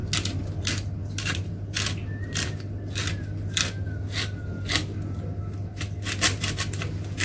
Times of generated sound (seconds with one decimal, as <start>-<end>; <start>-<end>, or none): none